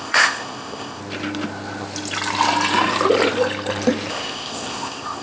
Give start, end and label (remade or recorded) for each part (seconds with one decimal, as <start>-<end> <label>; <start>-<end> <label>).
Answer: 0.0-1.0 remade; 1.0-4.1 recorded; 4.1-5.2 remade